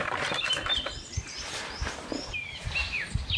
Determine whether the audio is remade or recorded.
recorded